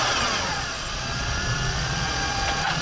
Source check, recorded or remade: remade